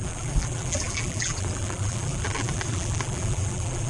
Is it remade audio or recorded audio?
remade